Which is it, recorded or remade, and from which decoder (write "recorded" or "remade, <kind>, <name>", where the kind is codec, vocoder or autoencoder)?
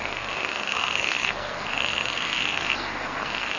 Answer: remade, codec, SNAC